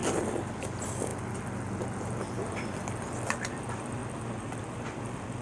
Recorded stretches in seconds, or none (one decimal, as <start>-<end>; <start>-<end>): 1.1-3.5